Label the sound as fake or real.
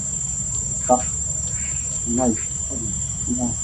real